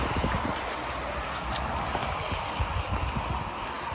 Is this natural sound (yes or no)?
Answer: yes